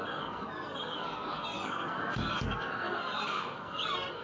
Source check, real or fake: fake